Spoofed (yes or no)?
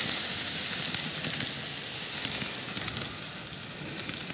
no